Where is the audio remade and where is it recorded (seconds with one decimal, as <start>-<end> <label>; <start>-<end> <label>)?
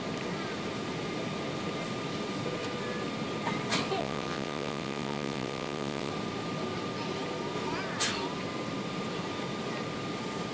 0.0-4.0 recorded; 4.0-6.1 remade; 6.1-10.5 recorded